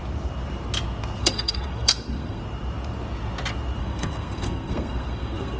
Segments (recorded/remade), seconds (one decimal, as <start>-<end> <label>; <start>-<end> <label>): 0.0-1.2 recorded; 1.2-2.4 remade; 2.4-3.8 recorded; 3.8-5.6 remade